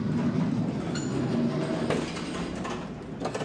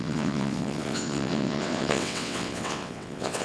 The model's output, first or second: second